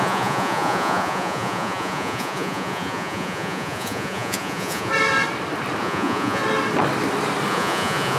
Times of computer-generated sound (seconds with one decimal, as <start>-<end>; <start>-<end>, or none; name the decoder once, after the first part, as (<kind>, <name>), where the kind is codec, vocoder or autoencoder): 0.0-4.9 (vocoder, Vocos); 5.8-6.4; 7.5-8.2